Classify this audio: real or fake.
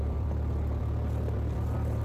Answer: fake